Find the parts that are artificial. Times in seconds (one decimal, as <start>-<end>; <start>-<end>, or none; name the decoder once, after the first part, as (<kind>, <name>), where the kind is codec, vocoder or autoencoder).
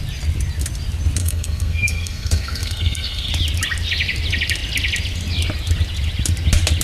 1.2-3.3 (codec, SNAC)